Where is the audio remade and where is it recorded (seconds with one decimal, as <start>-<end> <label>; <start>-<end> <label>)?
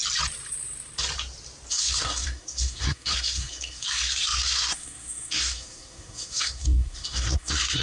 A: 0.0-1.7 recorded; 1.7-7.8 remade